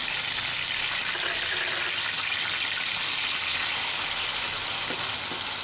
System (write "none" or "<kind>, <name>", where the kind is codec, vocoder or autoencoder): none